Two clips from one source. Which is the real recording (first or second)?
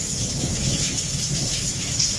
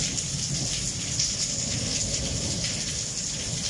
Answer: second